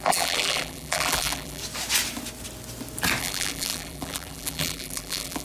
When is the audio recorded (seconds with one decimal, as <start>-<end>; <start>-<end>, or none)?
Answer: 1.6-3.2